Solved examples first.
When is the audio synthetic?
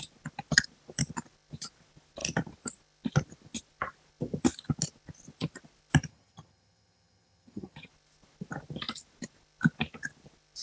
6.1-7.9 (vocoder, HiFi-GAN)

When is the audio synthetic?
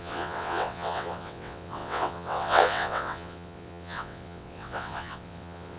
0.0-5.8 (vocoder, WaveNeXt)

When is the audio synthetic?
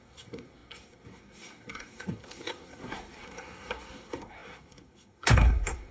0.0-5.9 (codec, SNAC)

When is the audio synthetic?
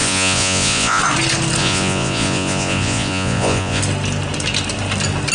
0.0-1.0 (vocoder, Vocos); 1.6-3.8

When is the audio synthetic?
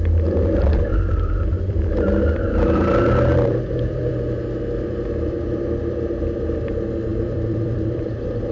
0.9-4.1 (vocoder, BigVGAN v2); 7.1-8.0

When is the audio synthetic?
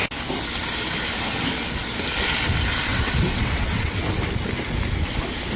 2.9-4.0 (vocoder, WaveNeXt)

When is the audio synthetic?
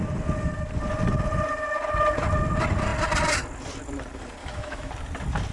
4.4-4.9 (autoencoder, DAC-VAE)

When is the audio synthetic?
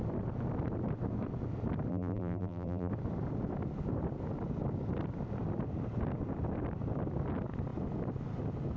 1.9-2.9 (vocoder, BigVGAN v2)